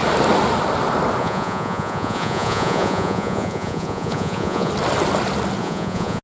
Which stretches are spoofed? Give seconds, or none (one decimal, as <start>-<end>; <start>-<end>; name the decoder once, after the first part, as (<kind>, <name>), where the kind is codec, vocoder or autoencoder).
1.2-4.7 (vocoder, Vocos); 5.6-6.2